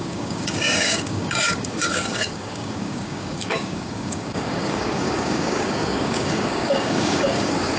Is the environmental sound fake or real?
fake